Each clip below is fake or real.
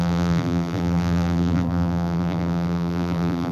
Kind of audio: fake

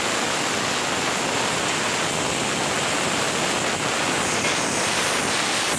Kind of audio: real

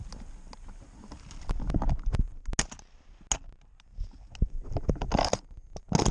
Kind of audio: real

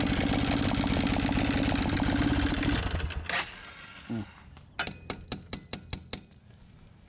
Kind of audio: real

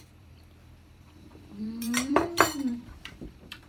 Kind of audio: fake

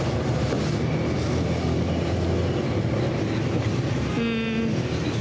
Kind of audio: real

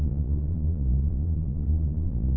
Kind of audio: fake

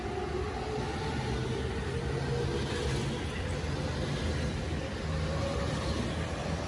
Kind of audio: real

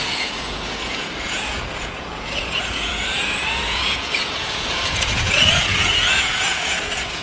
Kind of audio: fake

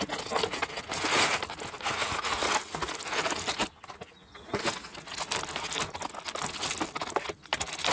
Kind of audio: real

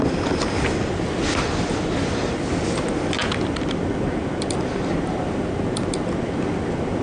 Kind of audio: real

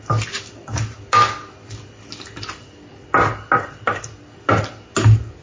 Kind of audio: real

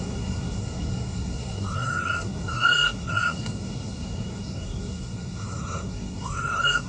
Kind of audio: fake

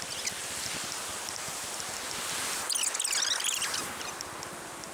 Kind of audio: real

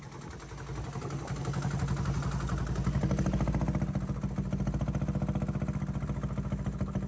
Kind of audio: real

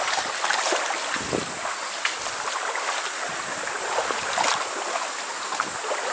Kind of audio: real